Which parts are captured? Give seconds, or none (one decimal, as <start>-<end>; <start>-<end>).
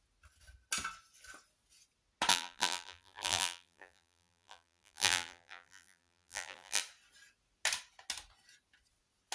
0.0-2.3; 6.8-9.3